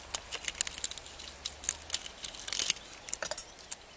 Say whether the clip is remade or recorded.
recorded